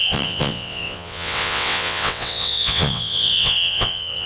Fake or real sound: fake